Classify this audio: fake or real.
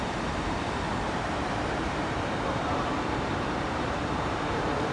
fake